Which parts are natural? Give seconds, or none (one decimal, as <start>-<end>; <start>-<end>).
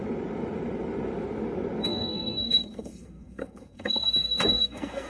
0.0-1.8